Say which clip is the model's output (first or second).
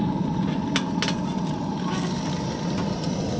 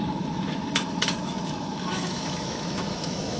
second